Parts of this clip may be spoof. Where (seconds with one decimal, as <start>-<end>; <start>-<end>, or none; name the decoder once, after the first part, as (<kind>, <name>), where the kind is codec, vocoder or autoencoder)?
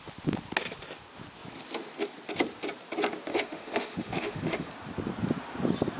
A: 3.3-4.7 (autoencoder, DAC-VAE)